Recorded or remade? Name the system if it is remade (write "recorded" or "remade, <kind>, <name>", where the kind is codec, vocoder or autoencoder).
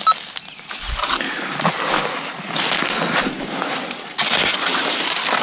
recorded